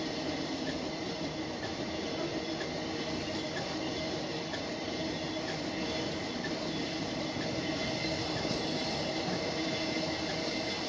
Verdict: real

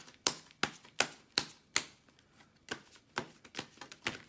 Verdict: real